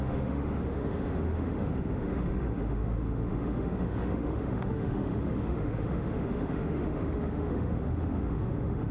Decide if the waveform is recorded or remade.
remade